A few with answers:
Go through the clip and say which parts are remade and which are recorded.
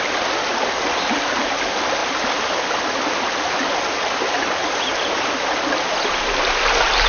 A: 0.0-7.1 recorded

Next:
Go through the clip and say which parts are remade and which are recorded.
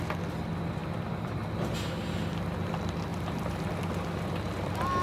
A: 0.0-3.1 recorded; 3.1-3.7 remade; 3.7-5.0 recorded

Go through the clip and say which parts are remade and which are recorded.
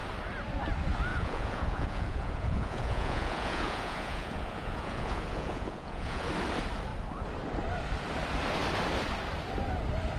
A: 0.0-1.1 recorded; 1.1-6.3 remade; 6.3-10.2 recorded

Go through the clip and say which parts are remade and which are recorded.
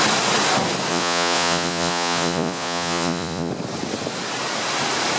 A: 0.0-0.9 recorded; 0.9-3.5 remade; 3.5-5.2 recorded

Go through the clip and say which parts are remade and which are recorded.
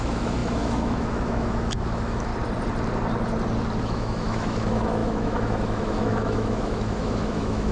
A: 0.0-2.3 remade; 2.3-3.8 recorded; 3.8-7.7 remade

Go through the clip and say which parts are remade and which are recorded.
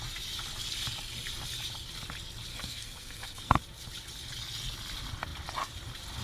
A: 0.0-2.5 recorded; 2.5-3.6 remade; 3.6-6.2 recorded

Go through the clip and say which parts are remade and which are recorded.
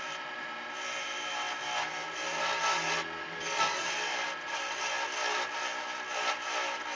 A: 0.0-3.2 recorded; 3.2-3.9 remade; 3.9-7.0 recorded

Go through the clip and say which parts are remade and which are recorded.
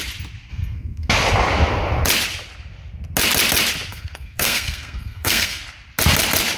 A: 0.0-0.5 recorded; 0.5-1.1 remade; 1.1-3.9 recorded; 3.9-5.6 remade; 5.6-6.6 recorded